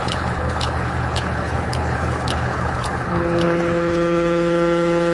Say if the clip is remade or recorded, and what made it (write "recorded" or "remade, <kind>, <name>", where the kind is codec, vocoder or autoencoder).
remade, codec, HILCodec